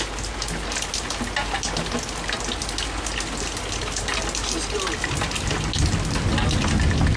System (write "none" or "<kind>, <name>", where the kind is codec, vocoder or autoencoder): none